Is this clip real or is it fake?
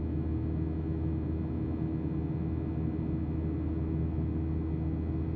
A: real